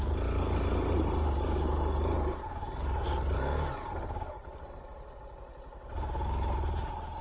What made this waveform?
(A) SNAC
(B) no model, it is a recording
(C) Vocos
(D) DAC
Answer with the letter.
B